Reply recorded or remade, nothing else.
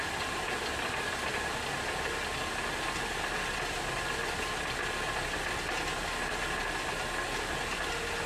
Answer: recorded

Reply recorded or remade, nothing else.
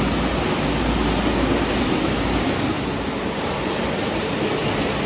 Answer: recorded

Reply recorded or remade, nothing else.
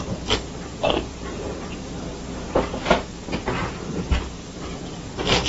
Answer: remade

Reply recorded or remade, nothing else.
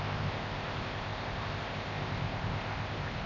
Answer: remade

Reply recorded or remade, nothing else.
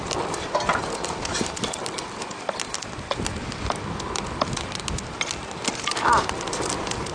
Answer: recorded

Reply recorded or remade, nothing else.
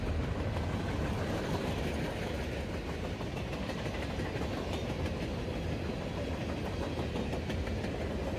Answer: recorded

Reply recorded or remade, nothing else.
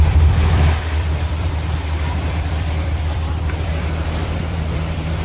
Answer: remade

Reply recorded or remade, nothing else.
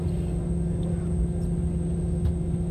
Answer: recorded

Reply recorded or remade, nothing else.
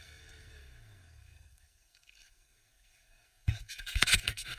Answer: remade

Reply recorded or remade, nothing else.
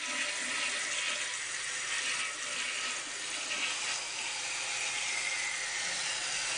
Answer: recorded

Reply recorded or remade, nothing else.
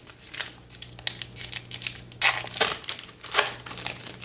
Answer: recorded